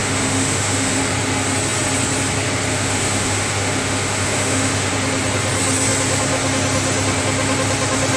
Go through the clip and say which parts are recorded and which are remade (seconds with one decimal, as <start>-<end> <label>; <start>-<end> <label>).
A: 0.0-1.0 remade; 1.0-2.7 recorded; 2.7-4.9 remade; 4.9-8.2 recorded